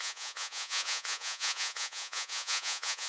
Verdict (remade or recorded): remade